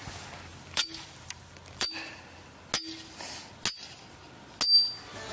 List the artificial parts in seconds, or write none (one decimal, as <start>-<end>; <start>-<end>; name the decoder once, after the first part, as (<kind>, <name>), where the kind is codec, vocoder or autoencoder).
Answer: 0.5-2.2 (vocoder, BigVGAN v2)